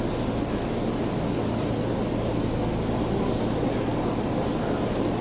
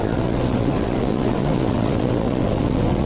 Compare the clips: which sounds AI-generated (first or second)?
second